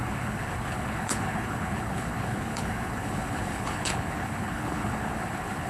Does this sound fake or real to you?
fake